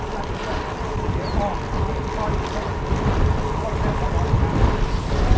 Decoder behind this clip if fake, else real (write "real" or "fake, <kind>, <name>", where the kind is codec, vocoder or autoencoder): real